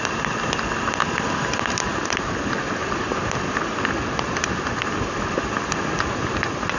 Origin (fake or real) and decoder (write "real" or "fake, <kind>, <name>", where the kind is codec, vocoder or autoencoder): real